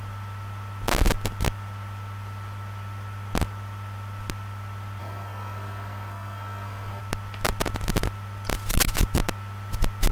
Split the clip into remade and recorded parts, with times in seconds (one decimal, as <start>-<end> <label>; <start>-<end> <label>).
0.0-5.0 recorded; 5.0-7.0 remade; 7.0-10.1 recorded